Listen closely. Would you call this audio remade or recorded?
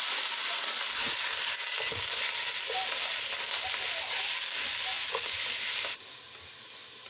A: recorded